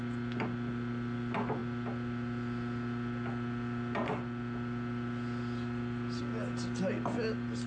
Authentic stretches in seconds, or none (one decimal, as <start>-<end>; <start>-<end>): 0.0-7.7